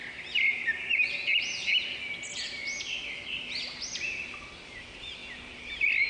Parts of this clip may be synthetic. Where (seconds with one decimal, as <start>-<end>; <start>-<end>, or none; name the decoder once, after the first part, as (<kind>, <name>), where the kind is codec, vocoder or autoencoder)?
none